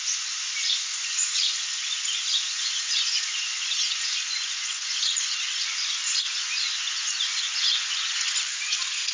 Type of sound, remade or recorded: remade